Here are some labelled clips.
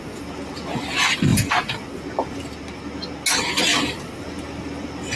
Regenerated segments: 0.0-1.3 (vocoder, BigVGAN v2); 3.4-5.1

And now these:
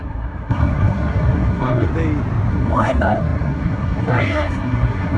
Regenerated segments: 0.0-1.9 (codec, SNAC); 2.5-5.2

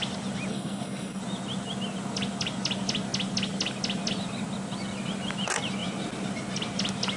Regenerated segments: 0.5-1.2 (codec, SNAC)

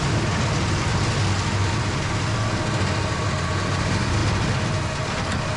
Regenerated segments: 0.0-0.9 (vocoder, BigVGAN v2); 3.8-4.2

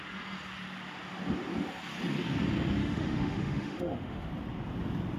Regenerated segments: 2.8-4.3 (autoencoder, DAC-VAE)

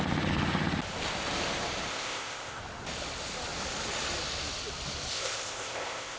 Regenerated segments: 1.9-2.6 (codec, ZipCodec); 5.1-6.2